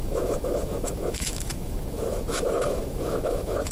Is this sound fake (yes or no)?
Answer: yes